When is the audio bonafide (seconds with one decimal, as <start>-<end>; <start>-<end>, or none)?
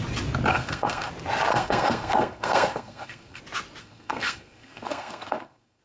0.0-0.5; 1.1-1.5; 3.4-3.8